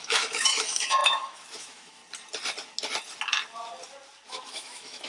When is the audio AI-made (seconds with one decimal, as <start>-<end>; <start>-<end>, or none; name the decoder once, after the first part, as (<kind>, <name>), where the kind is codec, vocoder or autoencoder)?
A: 0.0-2.0 (autoencoder, DAC-VAE); 4.3-5.1